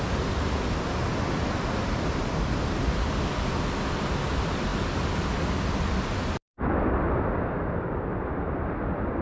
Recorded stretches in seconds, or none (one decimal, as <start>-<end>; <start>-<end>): 0.0-9.2